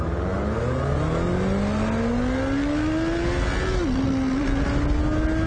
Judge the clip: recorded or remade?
recorded